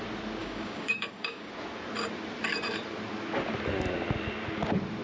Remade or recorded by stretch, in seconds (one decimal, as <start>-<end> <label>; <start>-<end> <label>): 0.0-0.4 recorded; 0.4-1.5 remade; 1.5-5.0 recorded